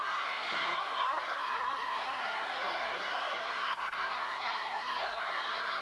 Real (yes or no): no